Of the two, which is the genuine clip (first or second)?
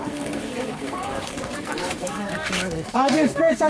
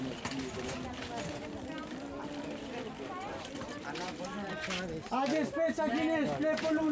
second